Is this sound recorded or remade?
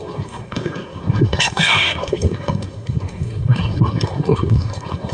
remade